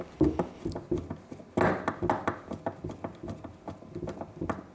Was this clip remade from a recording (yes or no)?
no